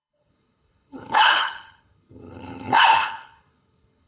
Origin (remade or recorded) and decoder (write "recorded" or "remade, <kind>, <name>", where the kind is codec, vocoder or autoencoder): remade, codec, HILCodec